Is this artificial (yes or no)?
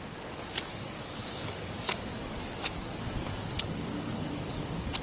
yes